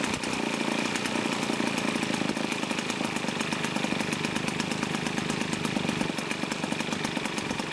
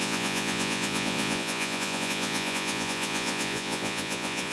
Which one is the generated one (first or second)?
second